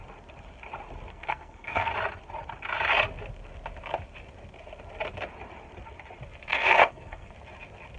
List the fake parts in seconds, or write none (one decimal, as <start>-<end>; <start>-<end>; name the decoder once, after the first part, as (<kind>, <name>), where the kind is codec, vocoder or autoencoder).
1.1-1.9 (codec, SNAC); 6.5-7.3